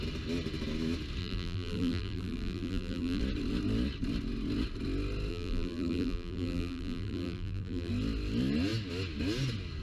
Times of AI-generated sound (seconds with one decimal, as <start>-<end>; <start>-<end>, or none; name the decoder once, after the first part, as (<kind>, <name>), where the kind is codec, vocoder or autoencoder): 1.2-3.2 (vocoder, BigVGAN v2); 5.3-7.9